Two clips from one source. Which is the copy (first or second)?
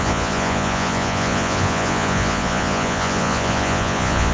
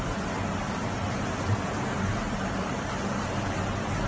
first